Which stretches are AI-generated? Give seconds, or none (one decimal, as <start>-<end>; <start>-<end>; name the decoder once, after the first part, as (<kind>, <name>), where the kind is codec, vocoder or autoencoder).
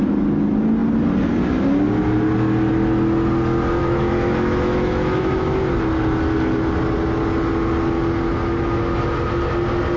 3.8-5.6 (autoencoder, DAC-VAE)